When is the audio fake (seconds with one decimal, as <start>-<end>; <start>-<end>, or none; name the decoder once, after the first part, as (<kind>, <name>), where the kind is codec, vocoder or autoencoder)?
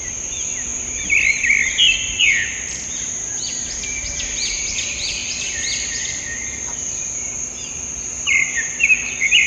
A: none